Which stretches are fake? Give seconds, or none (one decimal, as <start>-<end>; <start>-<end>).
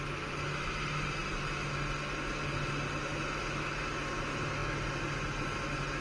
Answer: none